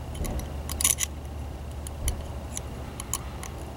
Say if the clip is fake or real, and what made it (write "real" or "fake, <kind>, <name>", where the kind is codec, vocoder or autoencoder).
real